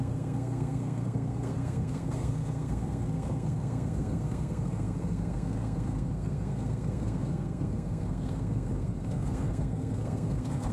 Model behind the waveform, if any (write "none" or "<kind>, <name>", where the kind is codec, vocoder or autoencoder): codec, SNAC